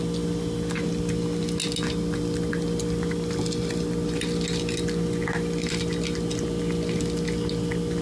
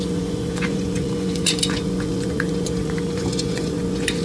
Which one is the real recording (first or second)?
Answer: first